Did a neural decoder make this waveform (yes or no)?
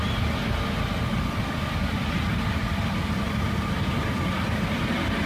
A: no